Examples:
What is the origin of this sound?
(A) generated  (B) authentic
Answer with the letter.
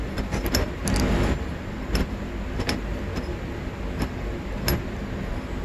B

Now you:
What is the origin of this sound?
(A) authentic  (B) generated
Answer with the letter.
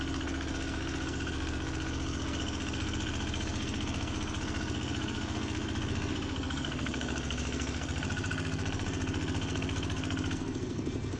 B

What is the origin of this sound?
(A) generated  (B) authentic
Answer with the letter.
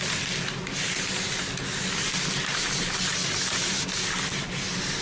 B